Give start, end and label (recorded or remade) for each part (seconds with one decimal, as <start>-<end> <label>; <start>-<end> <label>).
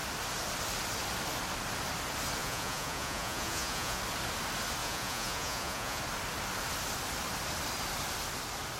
0.0-2.4 recorded; 2.4-4.0 remade; 4.0-4.8 recorded; 4.8-6.0 remade; 6.0-8.8 recorded